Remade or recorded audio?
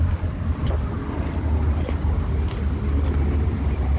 recorded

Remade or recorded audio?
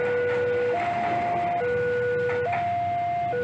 recorded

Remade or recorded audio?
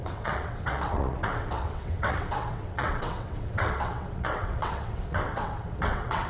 remade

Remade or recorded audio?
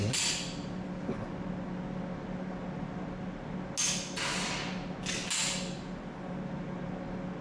recorded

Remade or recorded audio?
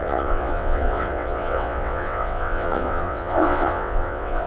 remade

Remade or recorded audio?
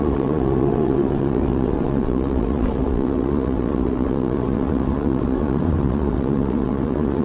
remade